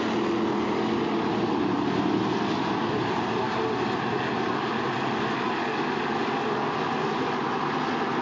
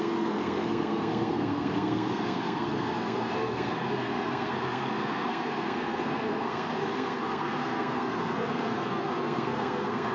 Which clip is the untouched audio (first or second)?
first